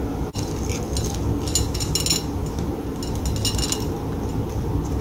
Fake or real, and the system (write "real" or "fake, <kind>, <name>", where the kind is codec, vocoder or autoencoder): real